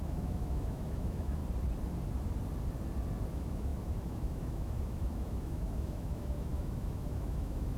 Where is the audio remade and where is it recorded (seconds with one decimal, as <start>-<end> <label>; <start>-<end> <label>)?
0.0-1.4 remade; 1.4-3.3 recorded; 3.3-7.8 remade